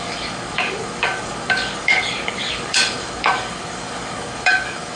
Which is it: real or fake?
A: fake